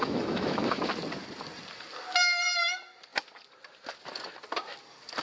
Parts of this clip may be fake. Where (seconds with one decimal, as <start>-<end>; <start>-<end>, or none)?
0.0-0.8